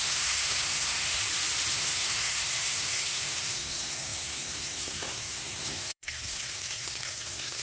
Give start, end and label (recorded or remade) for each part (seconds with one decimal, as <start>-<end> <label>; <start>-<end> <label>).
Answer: 0.0-1.2 remade; 1.2-1.7 recorded; 1.7-7.6 remade